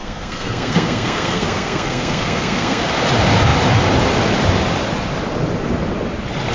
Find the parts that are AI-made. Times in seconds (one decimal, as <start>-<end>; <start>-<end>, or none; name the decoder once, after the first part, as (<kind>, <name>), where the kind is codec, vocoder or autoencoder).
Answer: 0.0-2.8 (codec, SNAC)